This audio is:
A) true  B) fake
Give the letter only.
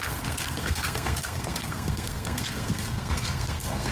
B